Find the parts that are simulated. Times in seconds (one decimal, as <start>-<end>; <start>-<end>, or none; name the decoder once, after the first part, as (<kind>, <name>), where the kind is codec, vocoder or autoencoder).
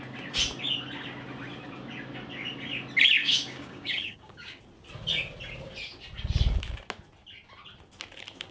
3.2-4.6 (codec, DAC)